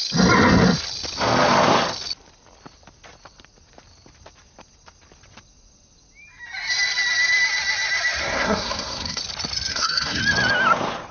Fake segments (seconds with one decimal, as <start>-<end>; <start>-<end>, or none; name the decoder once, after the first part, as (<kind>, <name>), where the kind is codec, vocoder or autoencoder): 8.2-9.2 (codec, SNAC); 9.7-10.2